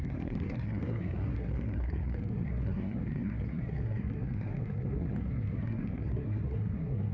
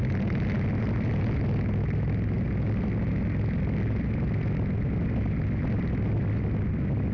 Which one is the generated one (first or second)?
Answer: first